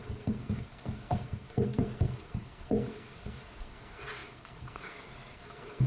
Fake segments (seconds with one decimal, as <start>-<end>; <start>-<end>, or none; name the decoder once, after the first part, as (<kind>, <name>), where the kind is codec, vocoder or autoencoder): 0.0-5.9 (codec, SNAC)